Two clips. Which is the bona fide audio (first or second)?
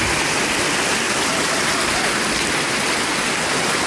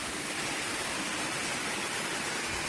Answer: first